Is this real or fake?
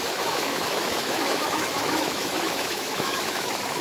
fake